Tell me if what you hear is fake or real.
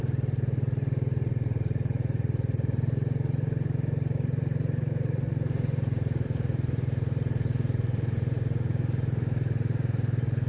fake